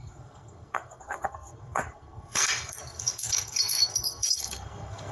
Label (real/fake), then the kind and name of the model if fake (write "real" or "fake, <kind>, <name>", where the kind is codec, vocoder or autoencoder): fake, codec, SNAC